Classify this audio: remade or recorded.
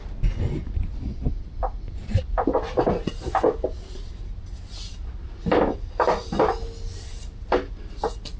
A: recorded